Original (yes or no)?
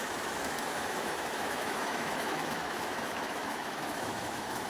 no